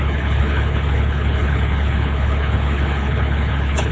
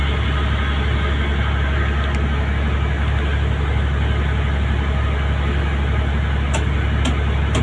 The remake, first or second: first